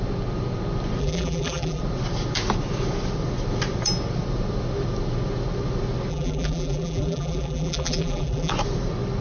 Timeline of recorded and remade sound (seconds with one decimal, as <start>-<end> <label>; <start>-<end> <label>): 0.0-1.0 recorded; 1.0-1.8 remade; 1.8-6.1 recorded; 6.1-8.5 remade; 8.5-9.2 recorded